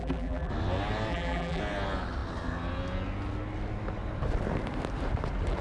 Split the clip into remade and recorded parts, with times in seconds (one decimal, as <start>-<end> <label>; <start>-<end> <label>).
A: 0.0-0.5 remade; 0.5-1.1 recorded; 1.1-1.6 remade; 1.6-5.6 recorded